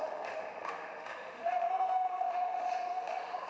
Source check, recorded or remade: remade